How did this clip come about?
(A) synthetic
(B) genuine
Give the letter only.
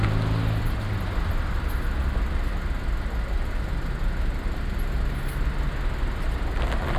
B